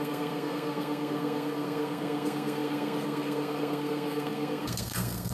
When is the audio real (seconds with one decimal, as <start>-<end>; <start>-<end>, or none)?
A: none